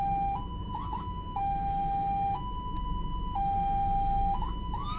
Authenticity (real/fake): fake